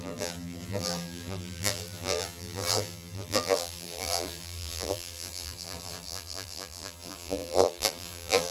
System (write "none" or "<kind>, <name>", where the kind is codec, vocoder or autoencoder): vocoder, BigVGAN v2